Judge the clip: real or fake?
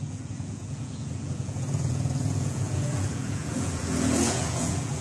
fake